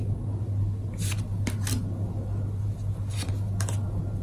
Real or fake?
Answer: real